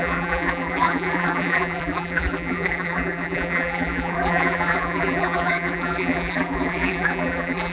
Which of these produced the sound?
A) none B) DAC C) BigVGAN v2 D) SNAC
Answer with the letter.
C